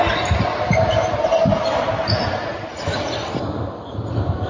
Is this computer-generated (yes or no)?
no